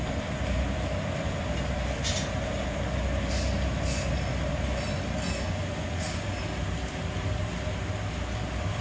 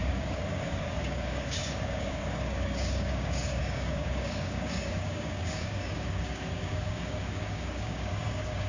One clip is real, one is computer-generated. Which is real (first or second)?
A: first